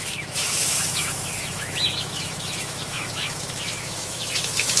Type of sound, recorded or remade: remade